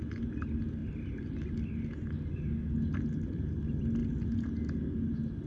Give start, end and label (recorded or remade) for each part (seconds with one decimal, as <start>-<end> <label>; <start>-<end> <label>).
0.0-5.5 recorded